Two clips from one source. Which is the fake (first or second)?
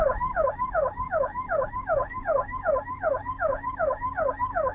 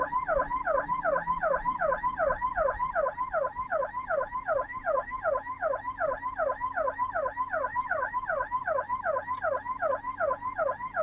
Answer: first